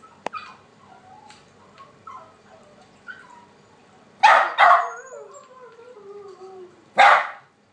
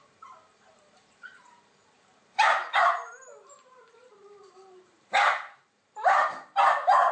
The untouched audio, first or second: first